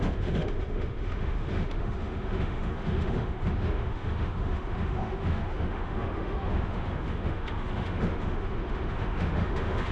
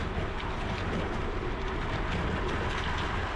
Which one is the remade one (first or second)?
first